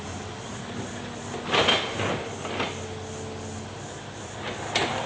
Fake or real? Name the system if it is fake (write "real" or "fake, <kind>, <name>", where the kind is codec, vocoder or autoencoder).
real